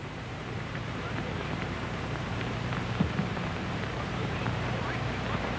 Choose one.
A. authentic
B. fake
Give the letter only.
B